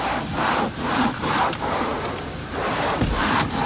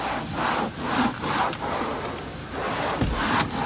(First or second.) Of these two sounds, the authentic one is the second